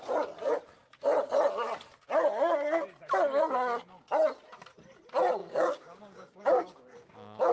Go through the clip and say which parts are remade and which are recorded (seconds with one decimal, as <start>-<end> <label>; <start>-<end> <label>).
0.0-5.4 recorded; 5.4-7.5 remade